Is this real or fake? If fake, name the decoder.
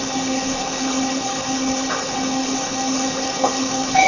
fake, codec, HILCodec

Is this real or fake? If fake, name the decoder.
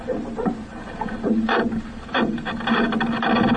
real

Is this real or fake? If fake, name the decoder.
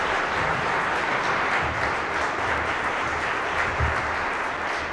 real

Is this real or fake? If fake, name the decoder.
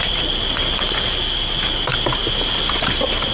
real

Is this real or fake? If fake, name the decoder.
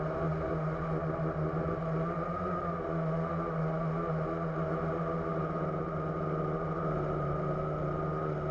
real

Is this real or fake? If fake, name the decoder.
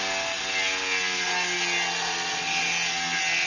real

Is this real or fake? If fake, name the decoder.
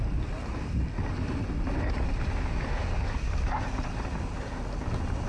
real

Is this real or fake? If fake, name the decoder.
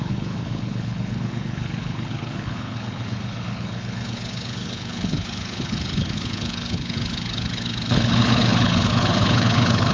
fake, codec, HILCodec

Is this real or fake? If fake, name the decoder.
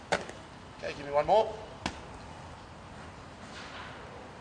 real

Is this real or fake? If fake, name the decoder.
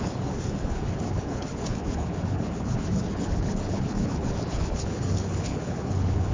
fake, codec, HILCodec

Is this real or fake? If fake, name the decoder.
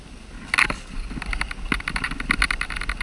real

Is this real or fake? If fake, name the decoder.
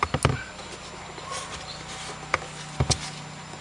real